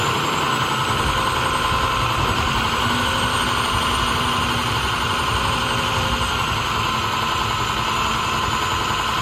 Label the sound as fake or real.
real